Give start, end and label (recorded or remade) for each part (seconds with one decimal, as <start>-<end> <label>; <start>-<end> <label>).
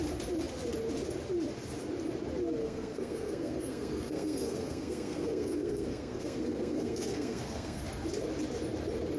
0.0-2.6 recorded; 2.6-7.8 remade; 7.8-9.2 recorded